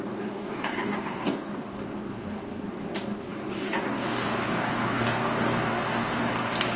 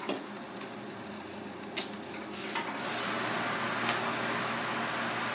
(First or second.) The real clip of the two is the second